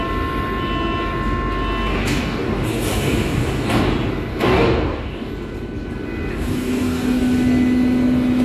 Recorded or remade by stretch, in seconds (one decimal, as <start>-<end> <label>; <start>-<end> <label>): 0.0-1.9 recorded; 1.9-3.9 remade; 3.9-4.3 recorded; 4.3-5.3 remade; 5.3-6.3 recorded; 6.3-7.2 remade; 7.2-8.4 recorded